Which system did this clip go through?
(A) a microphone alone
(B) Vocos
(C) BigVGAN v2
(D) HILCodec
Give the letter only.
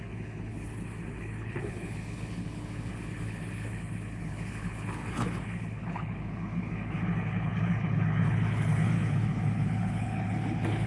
D